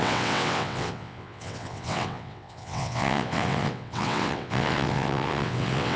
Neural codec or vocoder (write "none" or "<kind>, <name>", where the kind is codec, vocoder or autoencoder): vocoder, WaveNeXt